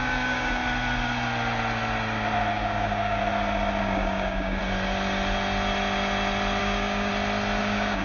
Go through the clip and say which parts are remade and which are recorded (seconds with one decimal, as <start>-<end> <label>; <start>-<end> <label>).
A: 0.0-0.6 remade; 0.6-2.5 recorded; 2.5-3.2 remade; 3.2-3.8 recorded; 3.8-4.6 remade; 4.6-6.6 recorded; 6.6-7.1 remade; 7.1-7.6 recorded; 7.6-8.0 remade